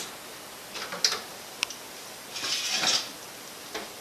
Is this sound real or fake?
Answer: real